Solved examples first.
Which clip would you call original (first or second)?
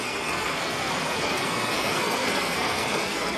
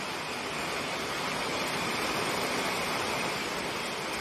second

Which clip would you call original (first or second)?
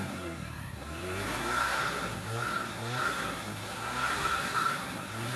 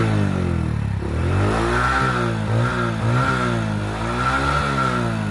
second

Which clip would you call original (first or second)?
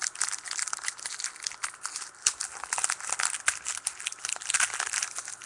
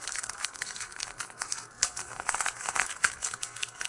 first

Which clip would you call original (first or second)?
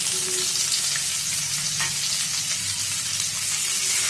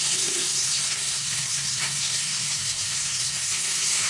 first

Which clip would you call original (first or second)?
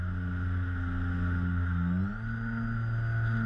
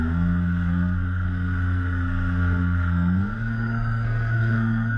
first